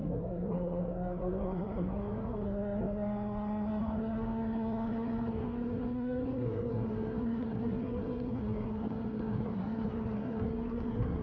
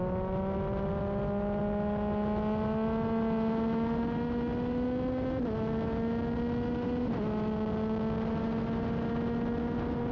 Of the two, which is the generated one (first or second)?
first